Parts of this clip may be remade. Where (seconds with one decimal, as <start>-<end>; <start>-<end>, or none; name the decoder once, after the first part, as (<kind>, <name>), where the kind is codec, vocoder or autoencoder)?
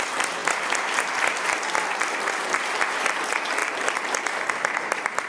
3.6-4.4 (vocoder, BigVGAN v2)